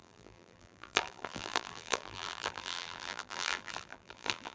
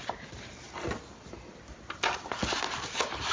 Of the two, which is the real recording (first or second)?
second